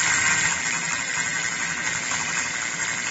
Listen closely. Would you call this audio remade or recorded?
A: recorded